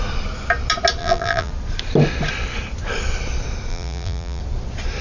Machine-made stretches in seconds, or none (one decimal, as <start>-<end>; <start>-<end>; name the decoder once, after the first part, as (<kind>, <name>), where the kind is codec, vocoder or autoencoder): 1.0-1.5 (vocoder, BigVGAN v2); 3.7-4.4